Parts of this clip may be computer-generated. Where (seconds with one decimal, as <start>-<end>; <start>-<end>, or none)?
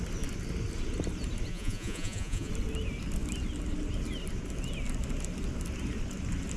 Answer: 1.5-2.5